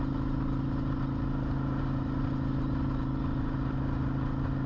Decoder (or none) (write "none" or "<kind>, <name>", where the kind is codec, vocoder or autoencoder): none